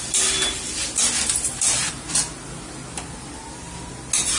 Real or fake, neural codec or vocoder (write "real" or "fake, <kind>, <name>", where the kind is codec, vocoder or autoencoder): real